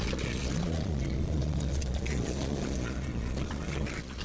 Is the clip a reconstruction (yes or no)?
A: yes